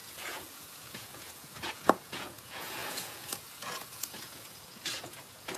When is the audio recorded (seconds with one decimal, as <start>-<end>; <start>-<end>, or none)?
none